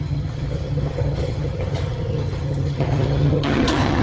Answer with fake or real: fake